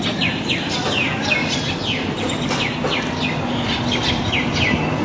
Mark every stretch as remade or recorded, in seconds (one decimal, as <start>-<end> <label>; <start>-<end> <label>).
0.0-5.0 recorded

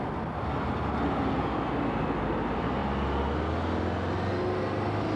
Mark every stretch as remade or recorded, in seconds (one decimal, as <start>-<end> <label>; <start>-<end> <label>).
0.0-5.2 recorded